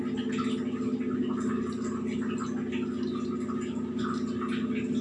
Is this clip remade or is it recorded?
recorded